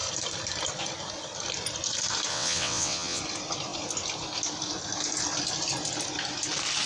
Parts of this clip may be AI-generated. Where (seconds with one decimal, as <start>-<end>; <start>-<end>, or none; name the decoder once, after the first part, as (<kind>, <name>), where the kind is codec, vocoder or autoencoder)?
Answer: 2.3-3.2 (vocoder, WaveNeXt)